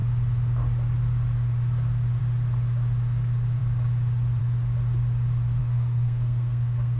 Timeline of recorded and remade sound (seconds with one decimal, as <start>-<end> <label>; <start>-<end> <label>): 0.0-5.6 recorded; 5.6-7.0 remade